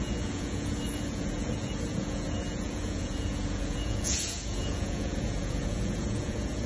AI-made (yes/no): yes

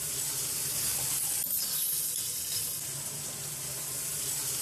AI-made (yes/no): no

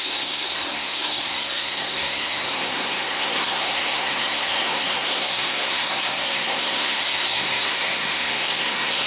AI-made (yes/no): yes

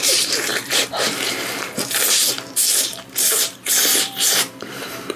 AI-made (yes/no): yes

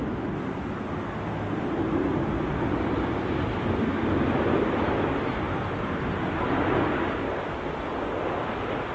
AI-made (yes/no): no